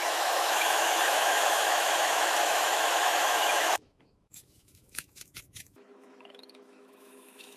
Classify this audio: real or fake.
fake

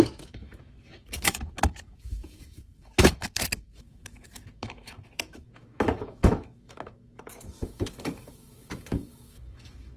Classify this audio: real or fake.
fake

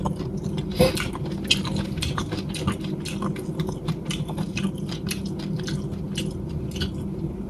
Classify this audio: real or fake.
real